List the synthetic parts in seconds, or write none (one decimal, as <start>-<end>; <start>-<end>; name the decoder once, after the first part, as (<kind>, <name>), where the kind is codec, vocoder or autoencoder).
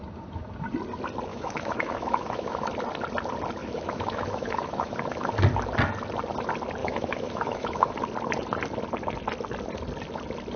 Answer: 1.3-2.7 (autoencoder, DAC-VAE); 3.6-5.3; 6.8-7.9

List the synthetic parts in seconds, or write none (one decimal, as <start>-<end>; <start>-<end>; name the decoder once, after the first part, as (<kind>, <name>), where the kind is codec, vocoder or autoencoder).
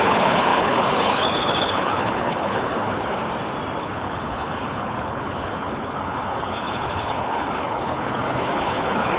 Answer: 0.0-3.2 (codec, HILCodec); 3.8-9.2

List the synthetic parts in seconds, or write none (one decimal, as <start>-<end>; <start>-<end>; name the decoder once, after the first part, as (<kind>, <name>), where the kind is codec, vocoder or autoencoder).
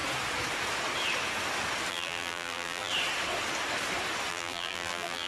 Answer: 1.9-2.9 (vocoder, BigVGAN v2); 4.3-5.3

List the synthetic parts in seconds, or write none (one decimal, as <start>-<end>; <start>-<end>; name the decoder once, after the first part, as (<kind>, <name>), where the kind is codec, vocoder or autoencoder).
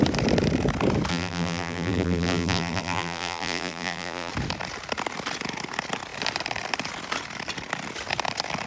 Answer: 1.1-4.3 (vocoder, BigVGAN v2)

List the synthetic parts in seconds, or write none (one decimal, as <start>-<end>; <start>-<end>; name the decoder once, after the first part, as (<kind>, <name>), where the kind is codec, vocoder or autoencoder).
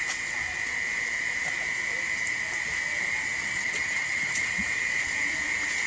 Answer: 3.4-4.5 (vocoder, HiFi-GAN)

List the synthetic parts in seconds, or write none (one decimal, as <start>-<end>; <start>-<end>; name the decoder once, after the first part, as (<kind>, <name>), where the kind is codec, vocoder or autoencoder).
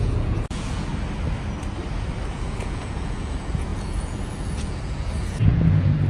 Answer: 0.0-0.9 (vocoder, Vocos); 2.3-6.1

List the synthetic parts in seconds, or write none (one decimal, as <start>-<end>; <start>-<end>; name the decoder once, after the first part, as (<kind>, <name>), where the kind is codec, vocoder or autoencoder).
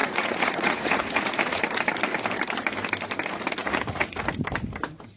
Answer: 0.0-1.6 (vocoder, Vocos); 3.6-4.2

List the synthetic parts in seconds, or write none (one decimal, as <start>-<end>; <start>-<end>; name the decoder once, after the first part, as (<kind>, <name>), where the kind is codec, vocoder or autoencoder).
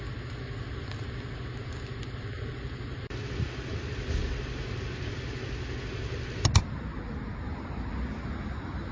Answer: none